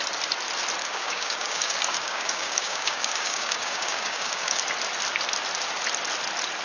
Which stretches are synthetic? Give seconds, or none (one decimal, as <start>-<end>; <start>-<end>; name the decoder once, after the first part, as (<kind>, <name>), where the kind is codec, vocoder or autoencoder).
0.8-4.6 (codec, DAC)